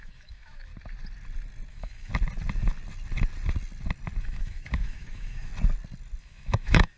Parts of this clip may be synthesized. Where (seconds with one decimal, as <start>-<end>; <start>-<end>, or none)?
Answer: 0.0-0.7; 1.7-2.1; 4.2-5.5; 6.2-7.0

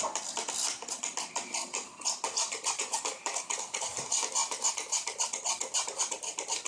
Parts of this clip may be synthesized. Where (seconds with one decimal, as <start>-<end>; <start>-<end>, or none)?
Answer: 2.9-4.0

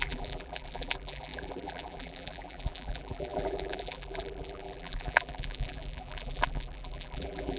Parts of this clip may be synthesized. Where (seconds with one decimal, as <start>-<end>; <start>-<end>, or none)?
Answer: 0.0-7.6

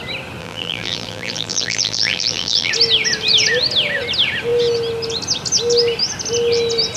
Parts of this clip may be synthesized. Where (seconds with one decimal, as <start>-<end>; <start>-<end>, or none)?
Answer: 0.4-2.7

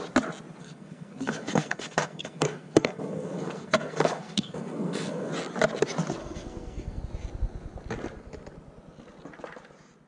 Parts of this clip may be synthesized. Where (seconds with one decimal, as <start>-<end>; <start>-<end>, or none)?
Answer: 0.6-5.3; 6.2-7.0

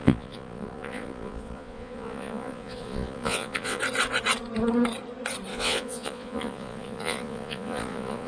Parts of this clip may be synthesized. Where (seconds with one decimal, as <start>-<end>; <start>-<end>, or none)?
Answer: 0.0-3.8; 5.5-8.3